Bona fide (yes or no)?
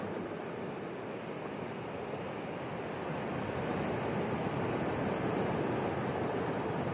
yes